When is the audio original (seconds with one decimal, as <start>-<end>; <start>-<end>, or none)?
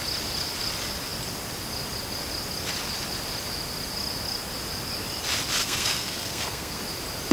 0.0-5.6; 6.8-7.3